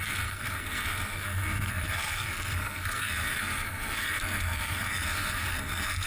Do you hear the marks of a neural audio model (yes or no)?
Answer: yes